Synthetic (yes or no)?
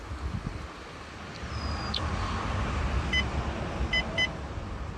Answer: no